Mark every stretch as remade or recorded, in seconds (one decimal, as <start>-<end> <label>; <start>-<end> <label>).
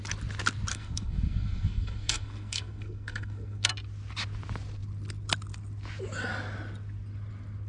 0.0-0.7 recorded; 0.7-3.7 remade; 3.7-7.7 recorded